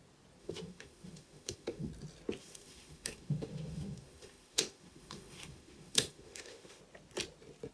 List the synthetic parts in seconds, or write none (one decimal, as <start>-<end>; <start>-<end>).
0.4-1.9; 2.4-6.8